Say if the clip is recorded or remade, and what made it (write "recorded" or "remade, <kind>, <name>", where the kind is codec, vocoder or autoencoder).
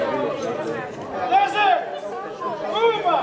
recorded